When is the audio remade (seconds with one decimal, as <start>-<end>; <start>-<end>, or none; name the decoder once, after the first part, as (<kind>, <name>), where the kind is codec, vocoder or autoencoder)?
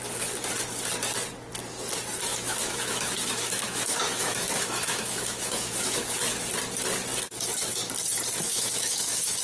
2.3-6.5 (autoencoder, DAC-VAE); 8.5-9.4